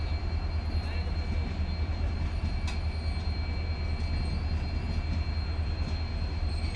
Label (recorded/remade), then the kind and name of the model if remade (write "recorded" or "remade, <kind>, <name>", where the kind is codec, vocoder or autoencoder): recorded